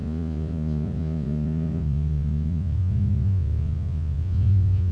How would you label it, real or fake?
fake